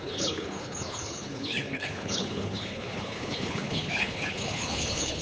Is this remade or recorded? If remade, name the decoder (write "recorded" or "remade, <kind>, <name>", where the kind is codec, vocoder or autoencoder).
remade, codec, HILCodec